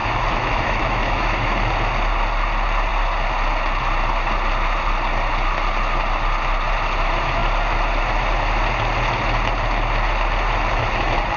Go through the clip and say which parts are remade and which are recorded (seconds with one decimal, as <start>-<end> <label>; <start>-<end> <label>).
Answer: 0.0-1.5 remade; 1.5-11.4 recorded